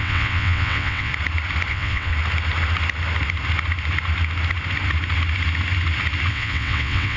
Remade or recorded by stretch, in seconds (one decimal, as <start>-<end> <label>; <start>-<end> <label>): 0.0-1.1 remade; 1.1-1.7 recorded; 1.7-2.1 remade; 2.1-6.3 recorded; 6.3-7.2 remade